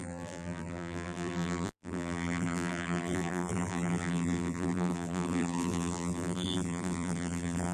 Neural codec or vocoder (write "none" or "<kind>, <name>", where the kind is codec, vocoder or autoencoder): vocoder, BigVGAN v2